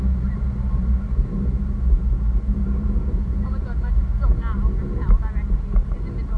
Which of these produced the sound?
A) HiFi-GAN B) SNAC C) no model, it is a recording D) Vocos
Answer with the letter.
C